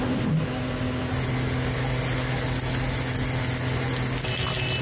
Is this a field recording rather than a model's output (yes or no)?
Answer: yes